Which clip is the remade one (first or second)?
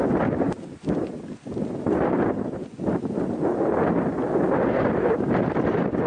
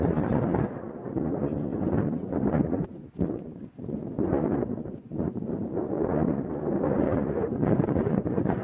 second